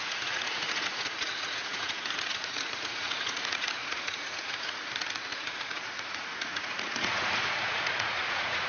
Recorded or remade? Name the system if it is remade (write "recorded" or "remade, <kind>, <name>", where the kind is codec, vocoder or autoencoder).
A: remade, vocoder, Vocos